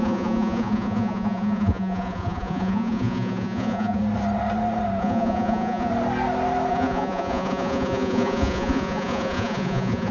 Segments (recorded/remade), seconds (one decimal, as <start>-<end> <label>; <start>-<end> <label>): 0.0-4.0 remade; 4.0-5.0 recorded; 5.0-5.9 remade; 5.9-6.7 recorded; 6.7-10.1 remade